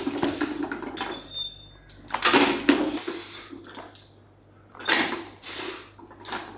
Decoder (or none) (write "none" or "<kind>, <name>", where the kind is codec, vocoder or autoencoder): none